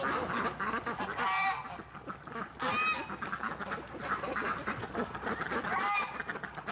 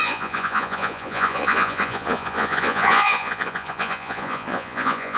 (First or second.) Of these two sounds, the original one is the first